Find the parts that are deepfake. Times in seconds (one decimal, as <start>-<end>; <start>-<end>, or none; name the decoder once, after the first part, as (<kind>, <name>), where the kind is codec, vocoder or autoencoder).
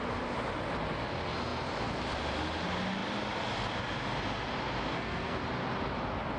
4.9-5.4 (codec, SNAC)